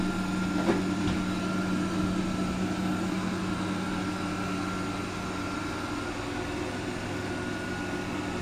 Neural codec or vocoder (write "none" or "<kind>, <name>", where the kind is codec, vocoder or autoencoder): none